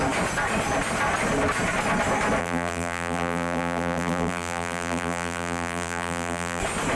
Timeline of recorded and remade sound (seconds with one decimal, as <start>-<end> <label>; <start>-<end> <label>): 0.0-2.4 recorded; 2.4-6.6 remade; 6.6-7.0 recorded